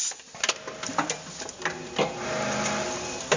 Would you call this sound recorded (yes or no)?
yes